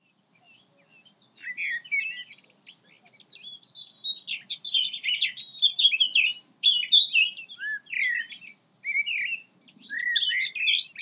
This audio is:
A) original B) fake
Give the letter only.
A